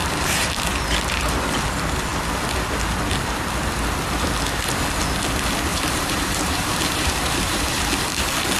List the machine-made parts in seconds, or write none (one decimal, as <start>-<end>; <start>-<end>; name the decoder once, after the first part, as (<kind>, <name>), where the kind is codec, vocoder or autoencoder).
0.0-0.6 (vocoder, BigVGAN v2); 5.7-7.8